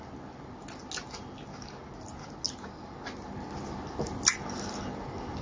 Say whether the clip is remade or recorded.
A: recorded